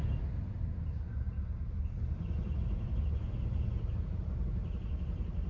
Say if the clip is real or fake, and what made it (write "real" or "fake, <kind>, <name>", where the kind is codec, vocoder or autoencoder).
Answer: real